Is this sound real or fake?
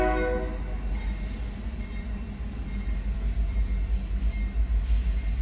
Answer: real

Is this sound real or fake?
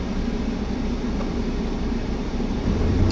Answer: fake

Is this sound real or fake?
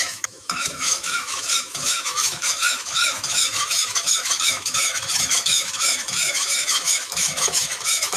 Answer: fake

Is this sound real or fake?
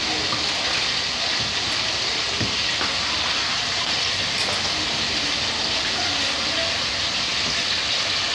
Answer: real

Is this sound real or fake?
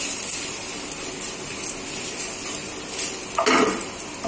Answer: real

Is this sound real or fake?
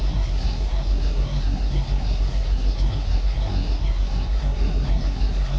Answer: fake